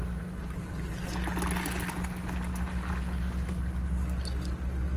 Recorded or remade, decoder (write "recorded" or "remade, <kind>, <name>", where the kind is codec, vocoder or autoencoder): recorded